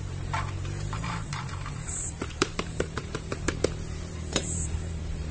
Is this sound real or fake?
fake